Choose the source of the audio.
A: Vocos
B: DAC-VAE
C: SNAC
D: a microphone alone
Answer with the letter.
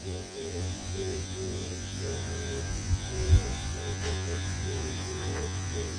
A